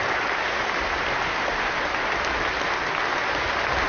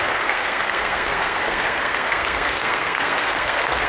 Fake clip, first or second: second